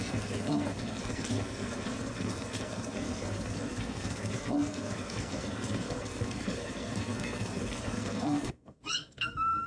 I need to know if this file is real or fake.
fake